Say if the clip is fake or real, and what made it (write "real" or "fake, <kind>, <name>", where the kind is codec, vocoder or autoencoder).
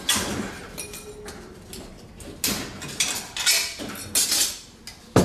real